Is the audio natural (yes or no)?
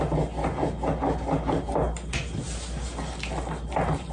yes